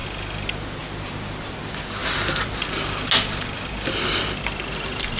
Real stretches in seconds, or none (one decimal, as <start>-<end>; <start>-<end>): 0.0-5.2